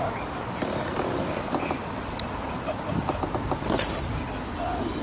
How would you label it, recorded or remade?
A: recorded